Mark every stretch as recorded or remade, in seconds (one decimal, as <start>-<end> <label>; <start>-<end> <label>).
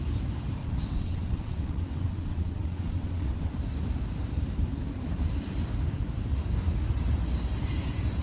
0.0-0.6 recorded; 0.6-3.5 remade; 3.5-8.2 recorded